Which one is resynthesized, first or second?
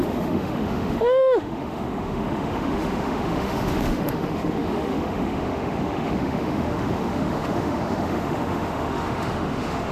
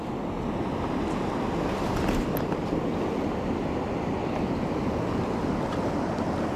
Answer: first